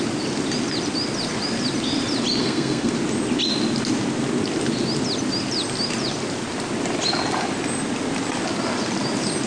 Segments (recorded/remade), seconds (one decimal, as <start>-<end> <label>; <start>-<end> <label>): 0.0-2.4 recorded; 2.4-2.9 remade; 2.9-9.5 recorded